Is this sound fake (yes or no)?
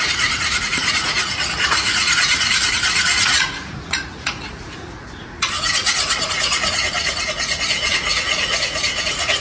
yes